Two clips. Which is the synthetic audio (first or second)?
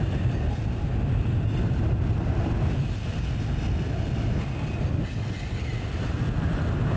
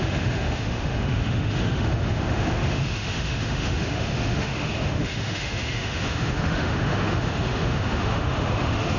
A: second